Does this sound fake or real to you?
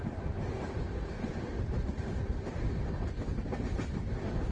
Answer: real